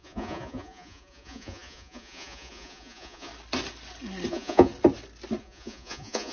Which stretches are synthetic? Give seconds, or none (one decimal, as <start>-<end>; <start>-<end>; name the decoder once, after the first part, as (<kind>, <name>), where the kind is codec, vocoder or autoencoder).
0.0-3.3 (vocoder, Vocos); 4.3-4.7; 5.4-6.3